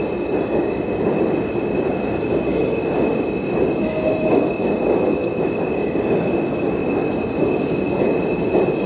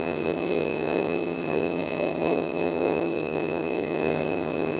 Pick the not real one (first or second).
second